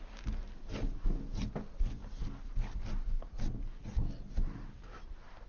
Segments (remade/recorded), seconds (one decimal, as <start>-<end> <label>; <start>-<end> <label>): 0.0-5.5 recorded